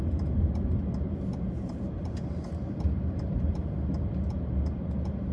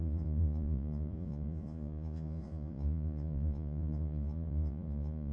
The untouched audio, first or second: first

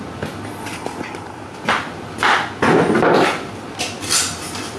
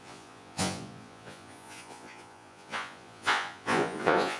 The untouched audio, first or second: first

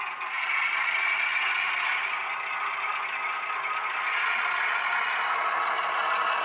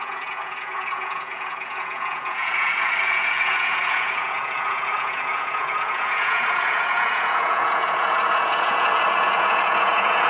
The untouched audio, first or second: first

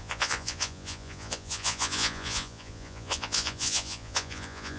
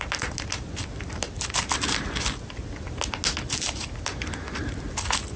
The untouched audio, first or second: second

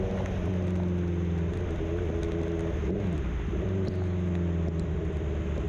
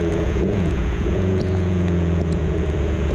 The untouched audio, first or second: first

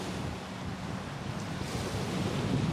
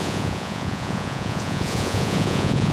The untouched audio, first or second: first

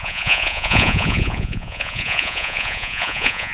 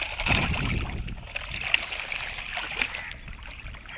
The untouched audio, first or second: second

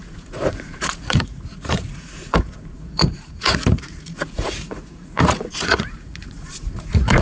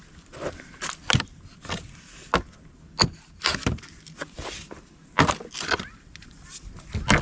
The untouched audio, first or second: second